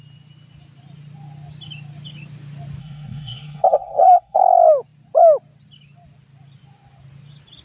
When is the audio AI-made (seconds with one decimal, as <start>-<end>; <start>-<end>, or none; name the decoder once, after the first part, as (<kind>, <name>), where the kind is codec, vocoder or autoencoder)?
2.8-4.4 (codec, SNAC)